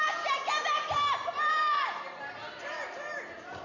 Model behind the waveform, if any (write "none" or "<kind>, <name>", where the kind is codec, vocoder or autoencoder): none